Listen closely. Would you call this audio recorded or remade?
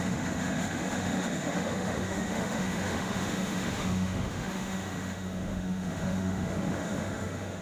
remade